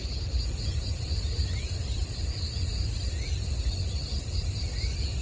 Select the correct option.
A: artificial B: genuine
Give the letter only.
A